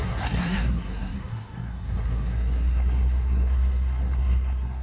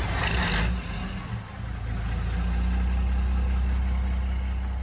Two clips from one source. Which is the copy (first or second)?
first